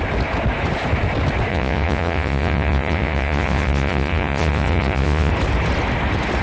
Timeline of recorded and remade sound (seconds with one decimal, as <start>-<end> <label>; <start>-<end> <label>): 0.0-1.5 recorded; 1.5-5.3 remade; 5.3-6.4 recorded